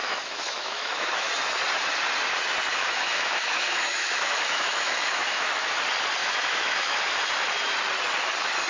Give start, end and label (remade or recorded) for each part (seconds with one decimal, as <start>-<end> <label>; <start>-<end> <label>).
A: 0.0-1.3 remade; 1.3-2.7 recorded; 2.7-5.8 remade; 5.8-6.2 recorded; 6.2-7.0 remade; 7.0-8.7 recorded